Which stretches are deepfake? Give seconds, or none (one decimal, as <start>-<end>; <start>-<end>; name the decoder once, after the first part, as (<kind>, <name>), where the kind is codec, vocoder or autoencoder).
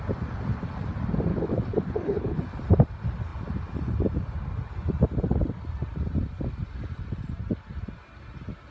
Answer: 1.3-2.4 (codec, HILCodec)